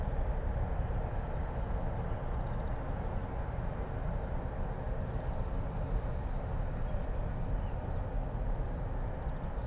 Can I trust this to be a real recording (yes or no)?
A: yes